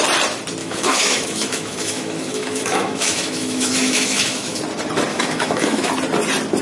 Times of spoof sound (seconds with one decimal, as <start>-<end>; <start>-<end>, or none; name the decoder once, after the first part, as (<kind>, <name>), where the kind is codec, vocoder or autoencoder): 0.6-4.6 (autoencoder, DAC-VAE); 5.1-5.9